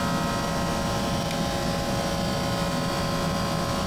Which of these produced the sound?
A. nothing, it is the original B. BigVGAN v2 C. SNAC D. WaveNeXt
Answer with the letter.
A